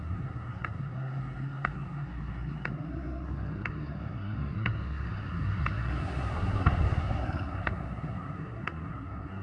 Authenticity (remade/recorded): remade